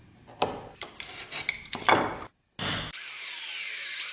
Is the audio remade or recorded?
recorded